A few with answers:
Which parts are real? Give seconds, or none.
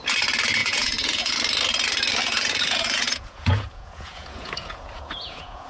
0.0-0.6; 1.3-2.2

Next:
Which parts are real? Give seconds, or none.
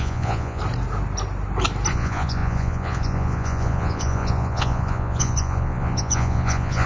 0.6-1.9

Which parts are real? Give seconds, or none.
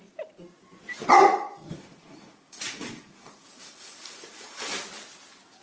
0.0-1.3; 4.7-5.6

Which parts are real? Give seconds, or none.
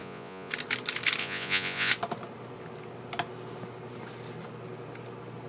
0.5-1.2; 1.9-5.5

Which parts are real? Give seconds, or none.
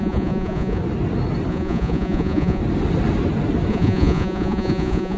0.8-1.5; 2.6-3.7